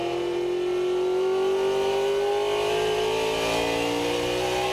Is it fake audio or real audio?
real